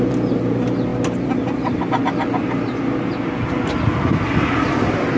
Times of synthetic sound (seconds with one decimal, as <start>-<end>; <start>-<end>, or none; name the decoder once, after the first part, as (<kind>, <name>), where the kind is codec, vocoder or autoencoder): none